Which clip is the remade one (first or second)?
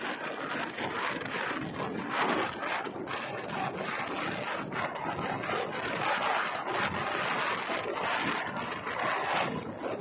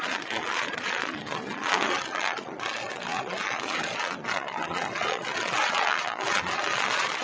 second